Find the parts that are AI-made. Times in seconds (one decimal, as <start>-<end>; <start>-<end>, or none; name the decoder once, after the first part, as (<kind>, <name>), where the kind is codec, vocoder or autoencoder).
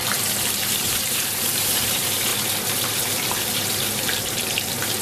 0.0-2.3 (vocoder, BigVGAN v2); 2.9-5.0